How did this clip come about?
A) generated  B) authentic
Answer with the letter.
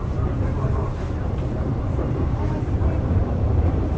A